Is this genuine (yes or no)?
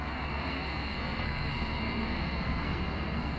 no